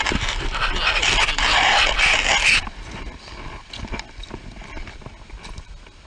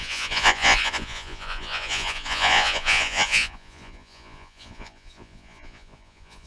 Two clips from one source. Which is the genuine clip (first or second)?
first